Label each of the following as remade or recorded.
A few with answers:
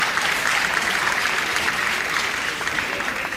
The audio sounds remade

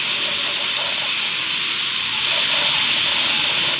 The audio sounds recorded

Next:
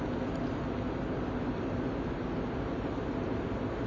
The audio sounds recorded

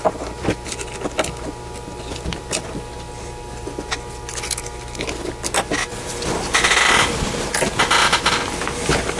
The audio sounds recorded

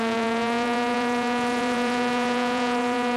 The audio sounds remade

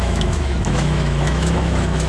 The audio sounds remade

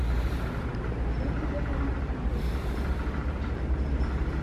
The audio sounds recorded